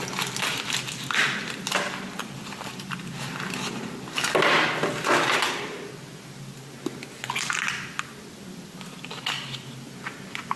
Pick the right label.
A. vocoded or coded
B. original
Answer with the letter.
B